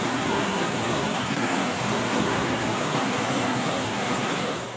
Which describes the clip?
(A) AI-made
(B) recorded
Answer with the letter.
A